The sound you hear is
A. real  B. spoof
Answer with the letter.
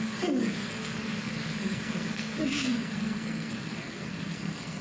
B